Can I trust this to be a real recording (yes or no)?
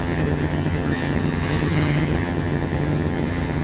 no